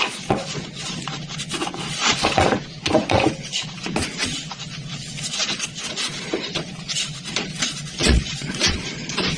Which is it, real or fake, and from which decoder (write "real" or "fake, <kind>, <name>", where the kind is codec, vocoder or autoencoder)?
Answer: fake, vocoder, Vocos